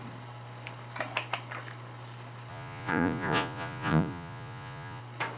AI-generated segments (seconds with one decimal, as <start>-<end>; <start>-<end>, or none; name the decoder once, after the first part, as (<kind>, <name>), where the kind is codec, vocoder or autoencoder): 2.5-5.0 (vocoder, Vocos)